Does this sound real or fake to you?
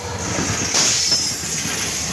real